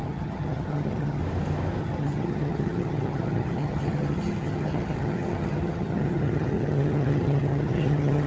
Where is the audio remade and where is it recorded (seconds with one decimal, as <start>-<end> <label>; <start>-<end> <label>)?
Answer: 0.0-1.2 remade; 1.2-1.8 recorded; 1.8-8.3 remade